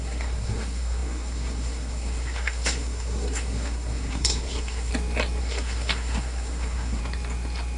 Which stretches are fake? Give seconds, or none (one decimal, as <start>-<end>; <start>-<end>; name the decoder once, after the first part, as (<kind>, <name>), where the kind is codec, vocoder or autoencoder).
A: 0.0-4.9 (codec, SNAC); 5.4-7.0